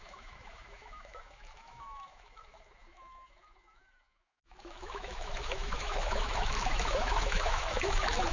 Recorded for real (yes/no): no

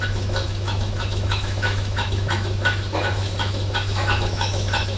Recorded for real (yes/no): no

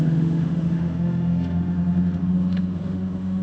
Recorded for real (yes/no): no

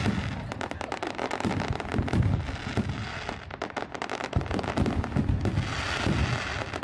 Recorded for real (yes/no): yes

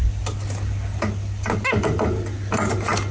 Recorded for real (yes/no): yes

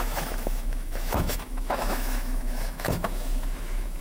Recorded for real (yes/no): no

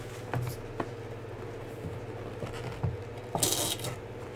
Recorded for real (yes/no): yes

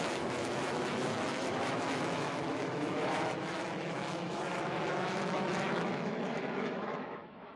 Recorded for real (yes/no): no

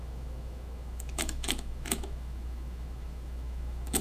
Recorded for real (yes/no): no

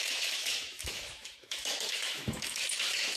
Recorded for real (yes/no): no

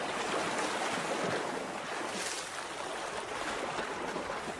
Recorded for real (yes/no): yes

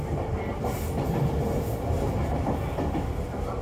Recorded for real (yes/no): yes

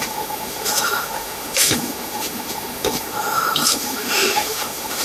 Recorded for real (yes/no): no